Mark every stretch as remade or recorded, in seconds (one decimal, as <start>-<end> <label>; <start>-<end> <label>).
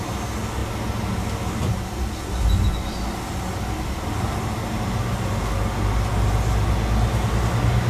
0.0-7.9 recorded